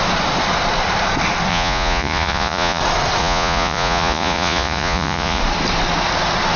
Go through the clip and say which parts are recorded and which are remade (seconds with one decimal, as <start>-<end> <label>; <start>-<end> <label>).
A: 0.0-1.5 recorded; 1.5-2.8 remade; 2.8-3.2 recorded; 3.2-5.4 remade; 5.4-6.6 recorded